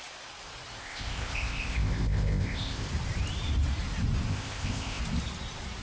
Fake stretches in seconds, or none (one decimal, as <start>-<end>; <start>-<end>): 0.8-2.9; 4.3-5.0